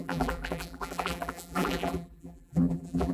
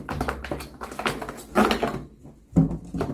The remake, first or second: first